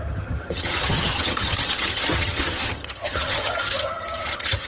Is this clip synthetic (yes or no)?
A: yes